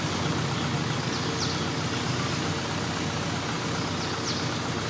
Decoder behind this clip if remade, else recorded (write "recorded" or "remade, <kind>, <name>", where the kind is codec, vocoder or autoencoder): recorded